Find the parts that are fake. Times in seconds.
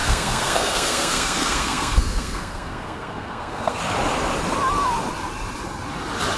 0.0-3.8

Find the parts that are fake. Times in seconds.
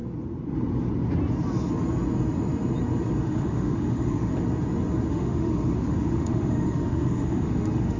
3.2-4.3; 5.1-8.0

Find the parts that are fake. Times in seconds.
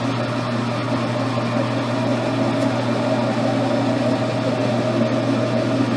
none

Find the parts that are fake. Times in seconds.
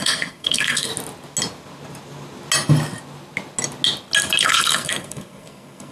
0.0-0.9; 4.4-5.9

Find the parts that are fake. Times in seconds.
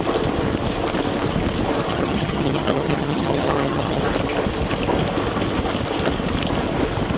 1.9-4.0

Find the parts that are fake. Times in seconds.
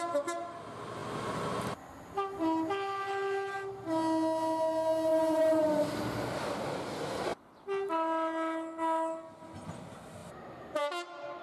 none